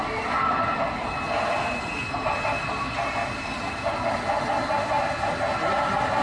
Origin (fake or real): real